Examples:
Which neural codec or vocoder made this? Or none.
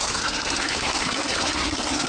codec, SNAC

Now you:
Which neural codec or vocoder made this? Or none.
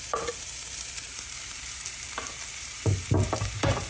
vocoder, BigVGAN v2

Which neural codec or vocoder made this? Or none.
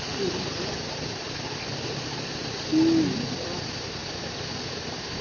none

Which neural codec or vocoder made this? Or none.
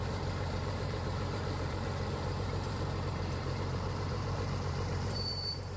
vocoder, BigVGAN v2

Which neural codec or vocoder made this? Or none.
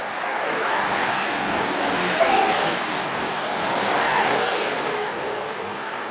codec, DAC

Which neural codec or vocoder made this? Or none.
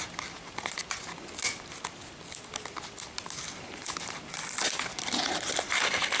none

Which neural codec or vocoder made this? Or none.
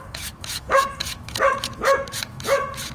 autoencoder, DAC-VAE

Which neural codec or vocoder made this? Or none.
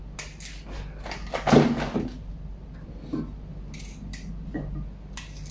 none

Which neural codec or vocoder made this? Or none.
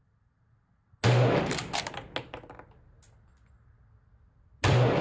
none